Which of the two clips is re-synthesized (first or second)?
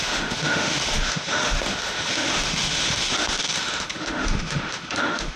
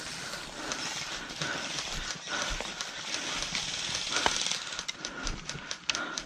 first